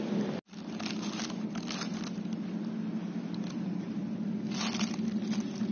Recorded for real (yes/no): yes